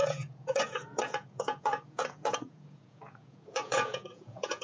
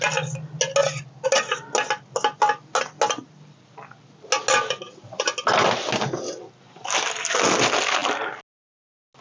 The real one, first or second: second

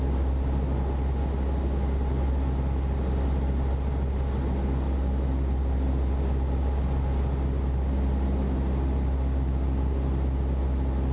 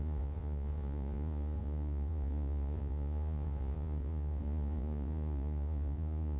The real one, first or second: first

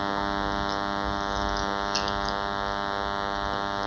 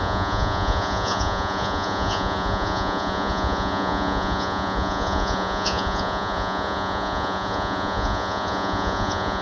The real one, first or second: first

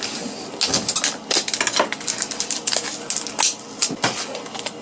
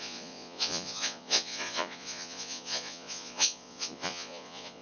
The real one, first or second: first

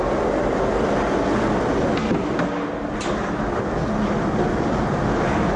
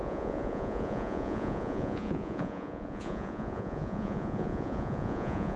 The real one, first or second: first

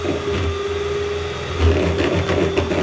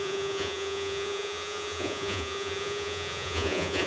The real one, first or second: first